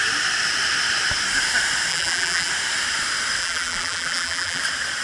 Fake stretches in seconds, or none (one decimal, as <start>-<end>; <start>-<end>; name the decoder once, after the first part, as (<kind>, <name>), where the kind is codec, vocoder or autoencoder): 1.9-2.5 (vocoder, BigVGAN v2); 3.4-4.6